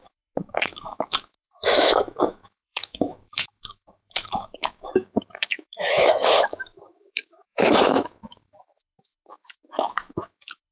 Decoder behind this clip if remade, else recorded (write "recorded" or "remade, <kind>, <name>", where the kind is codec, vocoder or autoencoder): remade, autoencoder, DAC-VAE